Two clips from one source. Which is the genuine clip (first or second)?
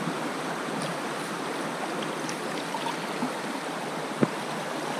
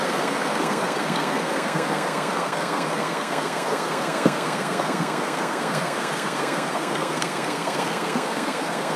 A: first